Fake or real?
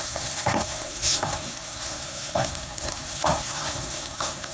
fake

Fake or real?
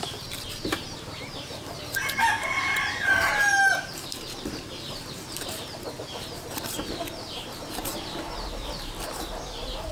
fake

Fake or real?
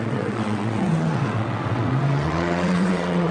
fake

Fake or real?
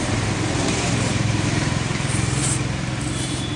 fake